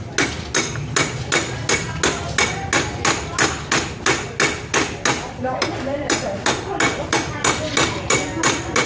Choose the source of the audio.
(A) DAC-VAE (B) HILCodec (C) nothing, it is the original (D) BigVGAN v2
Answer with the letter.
C